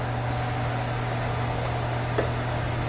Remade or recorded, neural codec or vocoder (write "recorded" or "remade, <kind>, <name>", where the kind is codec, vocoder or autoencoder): recorded